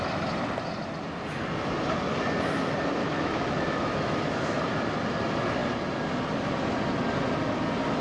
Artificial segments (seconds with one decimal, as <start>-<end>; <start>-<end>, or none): 3.0-4.6